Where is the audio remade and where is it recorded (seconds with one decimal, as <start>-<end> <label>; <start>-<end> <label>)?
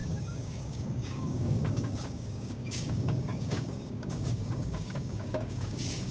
0.0-6.1 remade